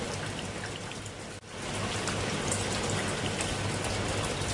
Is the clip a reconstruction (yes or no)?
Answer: no